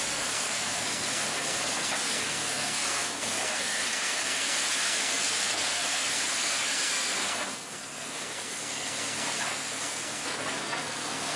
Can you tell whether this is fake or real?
fake